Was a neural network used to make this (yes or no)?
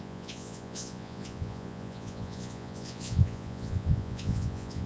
yes